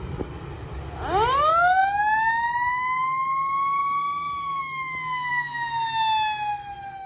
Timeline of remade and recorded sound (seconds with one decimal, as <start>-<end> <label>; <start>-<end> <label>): 0.0-7.1 recorded